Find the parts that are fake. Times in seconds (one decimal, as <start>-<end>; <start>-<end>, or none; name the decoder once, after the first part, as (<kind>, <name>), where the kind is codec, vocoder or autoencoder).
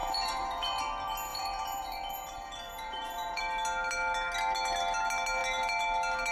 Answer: 0.0-0.8 (vocoder, Vocos); 1.3-3.4